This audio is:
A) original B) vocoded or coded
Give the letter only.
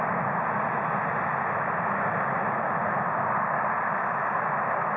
A